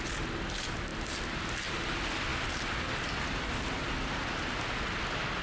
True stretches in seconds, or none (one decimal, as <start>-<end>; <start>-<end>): 0.0-5.4

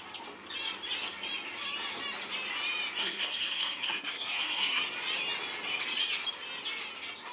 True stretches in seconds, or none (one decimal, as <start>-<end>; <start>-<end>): 0.0-3.0; 4.8-7.3